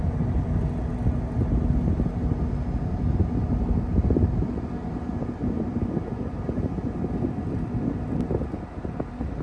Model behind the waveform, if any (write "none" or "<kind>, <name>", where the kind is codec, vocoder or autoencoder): none